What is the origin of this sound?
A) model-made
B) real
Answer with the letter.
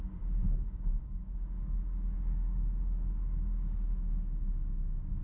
A